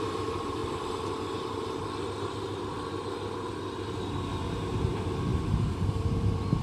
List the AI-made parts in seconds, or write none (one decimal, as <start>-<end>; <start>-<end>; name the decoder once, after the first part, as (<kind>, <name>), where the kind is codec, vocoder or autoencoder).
0.0-0.6 (vocoder, BigVGAN v2); 4.6-6.6